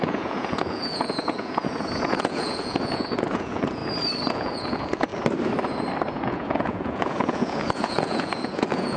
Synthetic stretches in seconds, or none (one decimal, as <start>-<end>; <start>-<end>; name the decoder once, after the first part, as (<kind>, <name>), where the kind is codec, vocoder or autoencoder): 0.0-3.8 (vocoder, Vocos); 4.3-5.1; 6.1-9.0

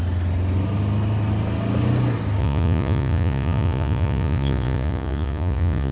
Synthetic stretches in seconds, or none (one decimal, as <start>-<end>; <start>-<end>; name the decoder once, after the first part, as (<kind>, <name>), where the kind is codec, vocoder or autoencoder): 2.4-5.9 (vocoder, Vocos)

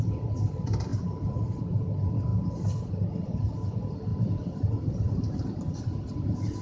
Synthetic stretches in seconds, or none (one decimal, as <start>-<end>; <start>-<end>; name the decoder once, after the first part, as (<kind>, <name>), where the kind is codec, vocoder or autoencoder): 0.9-1.6 (vocoder, BigVGAN v2); 2.3-2.9; 4.1-5.7

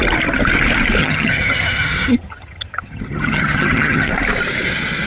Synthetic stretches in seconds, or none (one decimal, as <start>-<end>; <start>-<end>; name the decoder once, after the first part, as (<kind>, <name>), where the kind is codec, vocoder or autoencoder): 1.0-4.1 (vocoder, HiFi-GAN)

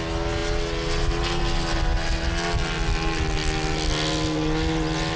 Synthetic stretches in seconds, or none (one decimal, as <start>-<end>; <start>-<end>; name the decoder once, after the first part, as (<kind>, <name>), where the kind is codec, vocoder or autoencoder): none